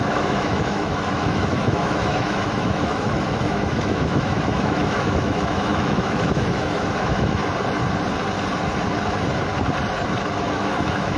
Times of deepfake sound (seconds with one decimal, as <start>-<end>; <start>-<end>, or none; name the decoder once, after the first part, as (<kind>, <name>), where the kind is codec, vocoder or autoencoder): 0.0-7.4 (autoencoder, DAC-VAE); 10.4-11.2